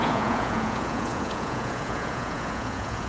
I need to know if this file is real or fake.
fake